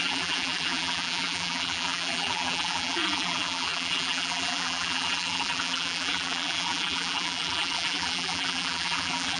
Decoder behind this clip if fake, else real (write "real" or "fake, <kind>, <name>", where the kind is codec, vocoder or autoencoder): fake, vocoder, BigVGAN v2